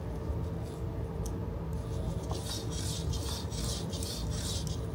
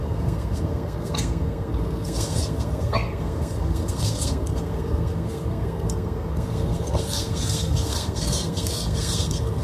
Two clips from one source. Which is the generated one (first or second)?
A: second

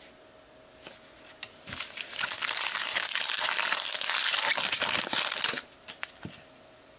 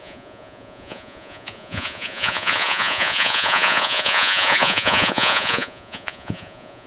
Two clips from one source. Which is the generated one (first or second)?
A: second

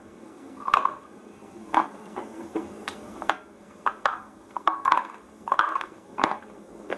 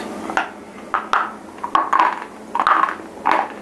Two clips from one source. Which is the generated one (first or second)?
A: first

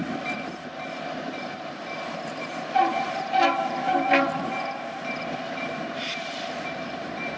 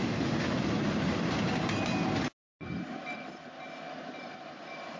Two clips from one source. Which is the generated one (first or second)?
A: first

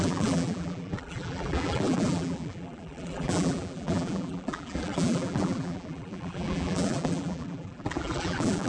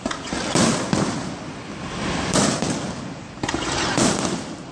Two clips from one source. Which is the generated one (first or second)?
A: first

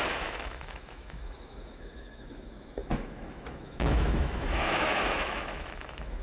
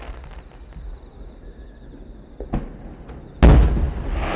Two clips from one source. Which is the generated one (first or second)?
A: first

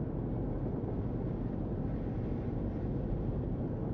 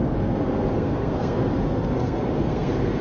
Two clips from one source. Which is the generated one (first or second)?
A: second